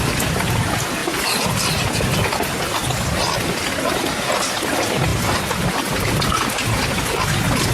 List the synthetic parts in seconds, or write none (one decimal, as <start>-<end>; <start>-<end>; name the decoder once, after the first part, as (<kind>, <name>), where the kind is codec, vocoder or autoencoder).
none